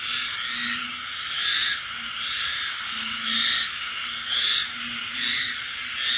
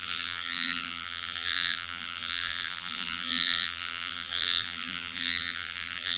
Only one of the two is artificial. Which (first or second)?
second